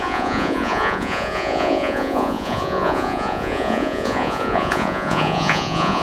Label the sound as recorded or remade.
remade